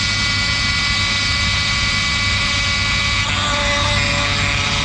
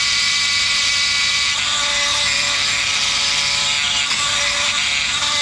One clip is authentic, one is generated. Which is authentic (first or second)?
first